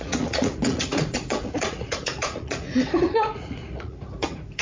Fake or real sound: fake